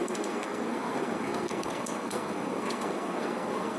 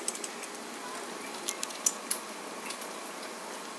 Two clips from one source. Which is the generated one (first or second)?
first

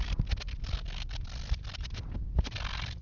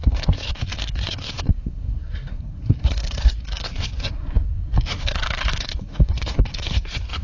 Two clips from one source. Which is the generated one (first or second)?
second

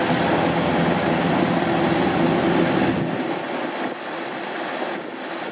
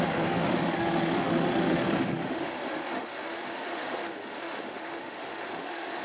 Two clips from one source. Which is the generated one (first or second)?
second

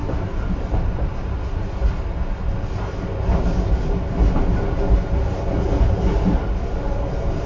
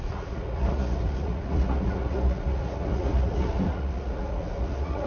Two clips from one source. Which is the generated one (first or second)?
second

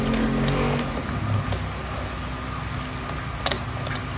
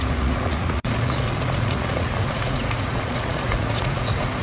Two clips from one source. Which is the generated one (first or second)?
second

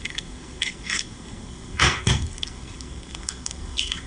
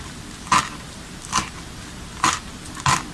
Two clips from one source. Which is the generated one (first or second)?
first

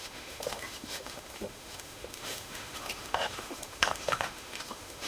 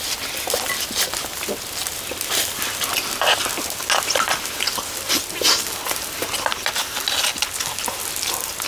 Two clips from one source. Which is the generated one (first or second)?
first